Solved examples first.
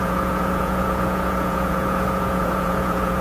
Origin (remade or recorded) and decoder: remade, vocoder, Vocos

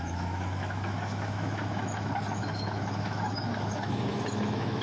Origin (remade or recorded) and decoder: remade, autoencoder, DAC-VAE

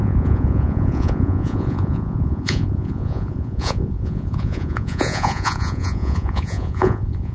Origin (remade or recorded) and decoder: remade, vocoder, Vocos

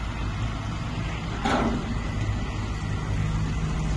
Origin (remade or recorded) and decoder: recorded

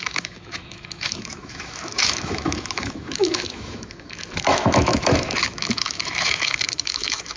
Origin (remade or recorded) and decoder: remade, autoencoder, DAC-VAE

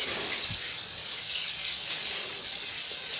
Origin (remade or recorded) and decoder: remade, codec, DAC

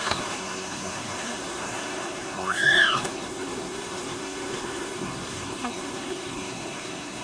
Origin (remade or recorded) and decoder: remade, codec, SNAC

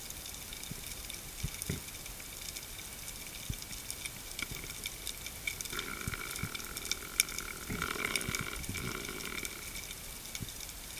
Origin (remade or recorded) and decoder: recorded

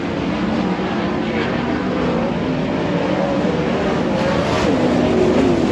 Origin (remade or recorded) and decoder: recorded